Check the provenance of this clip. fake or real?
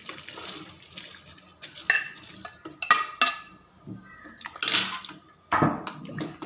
real